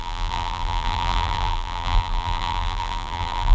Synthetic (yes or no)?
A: yes